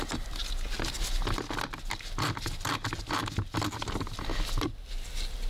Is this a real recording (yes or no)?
yes